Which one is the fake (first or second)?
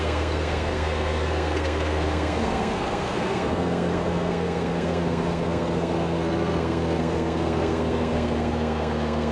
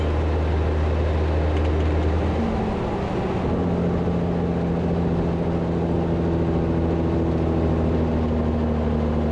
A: first